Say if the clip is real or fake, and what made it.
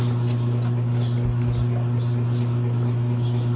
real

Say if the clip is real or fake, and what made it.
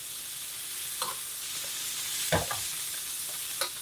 real